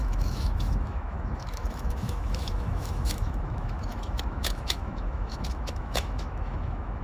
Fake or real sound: fake